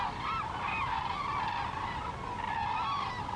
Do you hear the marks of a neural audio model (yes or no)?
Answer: no